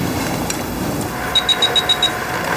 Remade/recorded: recorded